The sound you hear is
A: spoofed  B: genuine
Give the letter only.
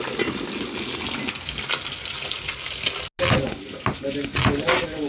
B